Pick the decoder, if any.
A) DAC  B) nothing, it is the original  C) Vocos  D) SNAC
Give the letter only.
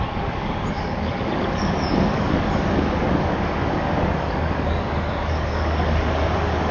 A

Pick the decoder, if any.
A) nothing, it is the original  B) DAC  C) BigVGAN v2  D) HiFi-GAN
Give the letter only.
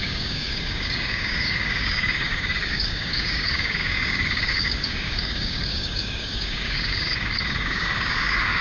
B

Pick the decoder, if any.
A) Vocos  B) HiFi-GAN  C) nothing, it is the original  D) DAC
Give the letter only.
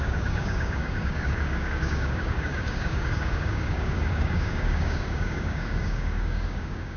D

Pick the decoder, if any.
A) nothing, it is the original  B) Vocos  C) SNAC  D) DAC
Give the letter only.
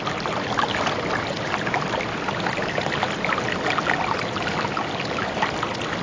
A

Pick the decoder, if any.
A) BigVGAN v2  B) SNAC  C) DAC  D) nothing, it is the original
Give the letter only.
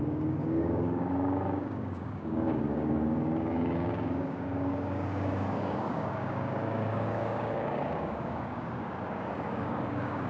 C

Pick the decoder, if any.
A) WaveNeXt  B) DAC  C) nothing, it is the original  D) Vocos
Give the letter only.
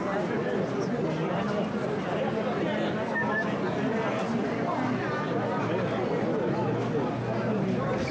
C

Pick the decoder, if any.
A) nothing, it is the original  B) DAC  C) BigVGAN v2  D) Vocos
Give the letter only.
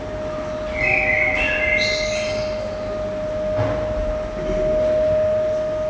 A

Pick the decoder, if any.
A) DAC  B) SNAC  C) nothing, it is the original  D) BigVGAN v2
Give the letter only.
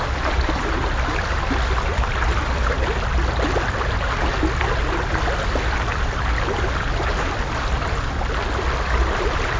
C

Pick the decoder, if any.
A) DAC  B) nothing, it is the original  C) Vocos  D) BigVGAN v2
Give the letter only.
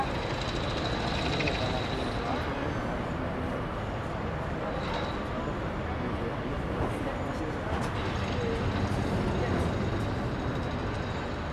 B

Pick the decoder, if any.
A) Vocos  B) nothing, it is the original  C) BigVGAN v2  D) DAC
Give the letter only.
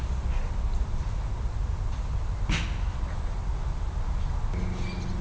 B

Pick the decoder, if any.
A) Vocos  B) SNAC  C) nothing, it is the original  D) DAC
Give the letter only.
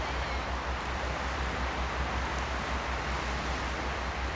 C